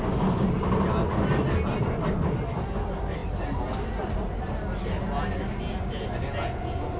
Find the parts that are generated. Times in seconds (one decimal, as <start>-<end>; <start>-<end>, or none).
none